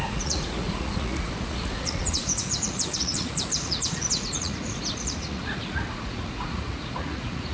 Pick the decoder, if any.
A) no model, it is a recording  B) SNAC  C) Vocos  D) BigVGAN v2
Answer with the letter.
C